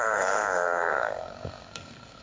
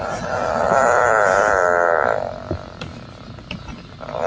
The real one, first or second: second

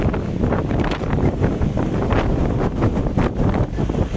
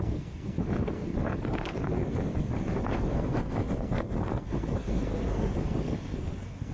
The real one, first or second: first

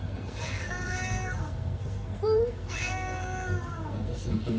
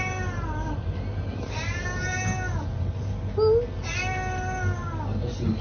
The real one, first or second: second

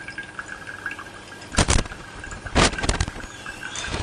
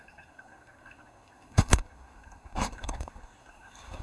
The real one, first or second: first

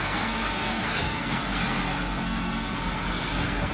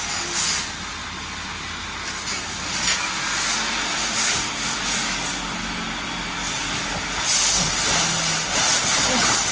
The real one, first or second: second